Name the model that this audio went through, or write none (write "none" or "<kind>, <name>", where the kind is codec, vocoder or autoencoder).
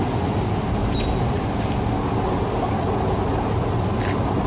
none